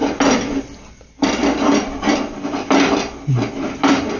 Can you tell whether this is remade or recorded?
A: recorded